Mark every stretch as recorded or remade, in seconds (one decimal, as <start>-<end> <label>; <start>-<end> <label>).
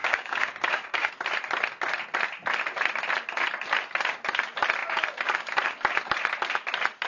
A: 0.0-1.1 remade; 1.1-7.1 recorded